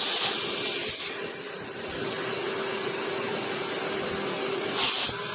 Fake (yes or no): no